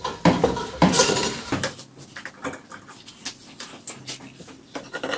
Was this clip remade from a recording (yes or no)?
no